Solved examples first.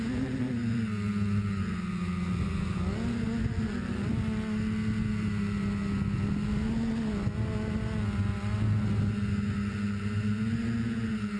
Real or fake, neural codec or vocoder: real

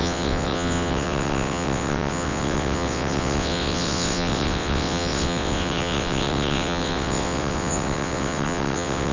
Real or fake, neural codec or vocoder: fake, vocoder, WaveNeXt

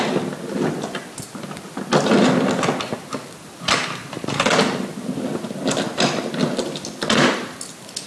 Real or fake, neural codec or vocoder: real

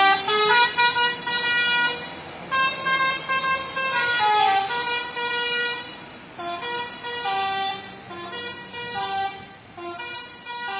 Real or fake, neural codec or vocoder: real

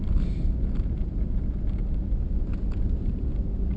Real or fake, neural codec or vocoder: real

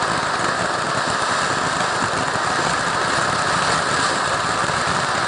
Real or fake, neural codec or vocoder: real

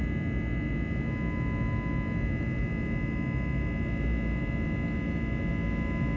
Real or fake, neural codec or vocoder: real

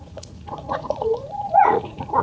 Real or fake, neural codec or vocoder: fake, vocoder, Vocos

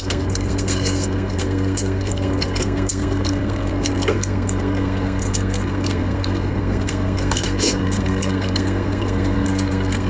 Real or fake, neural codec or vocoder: fake, codec, SNAC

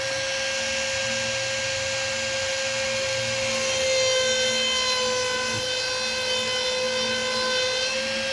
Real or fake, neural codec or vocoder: real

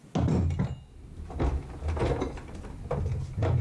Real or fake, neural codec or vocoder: real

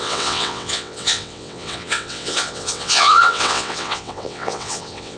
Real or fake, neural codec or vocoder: fake, vocoder, WaveNeXt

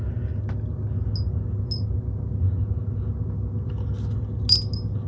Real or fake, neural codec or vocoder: real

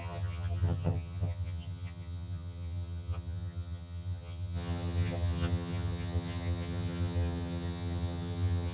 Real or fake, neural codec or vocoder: fake, vocoder, HiFi-GAN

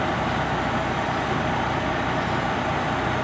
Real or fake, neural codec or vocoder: real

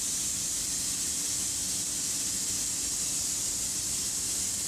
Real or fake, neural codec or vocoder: real